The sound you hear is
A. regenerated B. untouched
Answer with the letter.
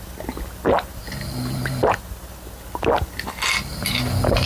B